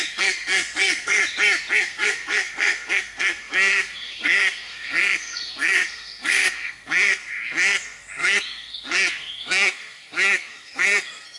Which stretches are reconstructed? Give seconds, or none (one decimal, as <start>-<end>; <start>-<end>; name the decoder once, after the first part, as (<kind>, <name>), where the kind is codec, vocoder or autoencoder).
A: 0.0-1.2 (codec, SNAC); 1.8-11.4